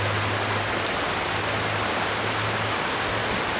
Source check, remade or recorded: recorded